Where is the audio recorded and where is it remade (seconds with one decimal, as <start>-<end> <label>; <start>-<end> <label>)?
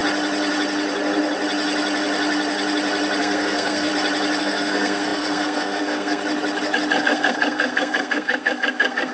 0.0-3.2 recorded; 3.2-3.9 remade; 3.9-4.4 recorded; 4.4-6.2 remade; 6.2-7.0 recorded; 7.0-9.1 remade